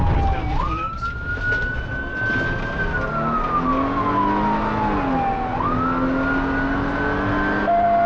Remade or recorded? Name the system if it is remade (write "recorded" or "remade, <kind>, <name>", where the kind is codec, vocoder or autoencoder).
recorded